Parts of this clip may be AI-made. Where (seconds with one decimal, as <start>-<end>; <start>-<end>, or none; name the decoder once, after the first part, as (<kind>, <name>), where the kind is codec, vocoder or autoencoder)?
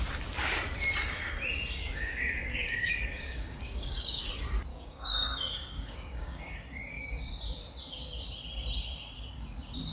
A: 1.8-4.3 (codec, DAC); 4.7-7.3